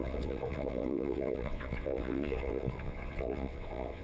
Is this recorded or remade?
remade